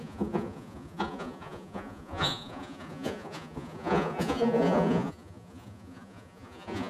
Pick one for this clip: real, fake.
fake